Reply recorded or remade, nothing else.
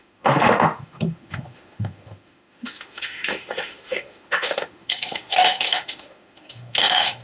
remade